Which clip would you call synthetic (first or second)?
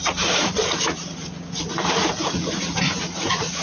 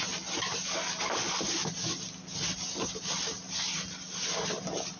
first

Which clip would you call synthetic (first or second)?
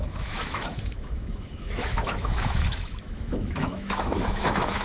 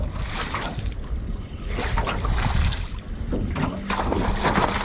first